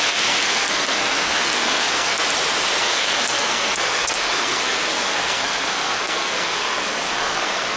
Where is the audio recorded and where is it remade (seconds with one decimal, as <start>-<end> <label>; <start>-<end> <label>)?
0.0-2.2 remade; 2.2-2.8 recorded; 2.8-7.8 remade